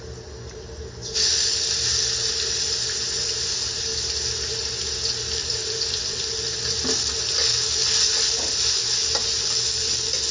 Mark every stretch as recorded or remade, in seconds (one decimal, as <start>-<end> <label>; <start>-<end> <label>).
0.0-5.4 recorded; 5.4-8.8 remade; 8.8-10.3 recorded